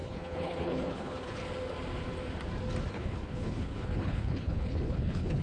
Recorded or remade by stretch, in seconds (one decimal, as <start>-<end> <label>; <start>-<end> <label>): 0.0-1.4 remade; 1.4-2.9 recorded; 2.9-5.4 remade